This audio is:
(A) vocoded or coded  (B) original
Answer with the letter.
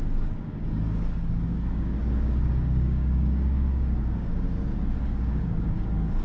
A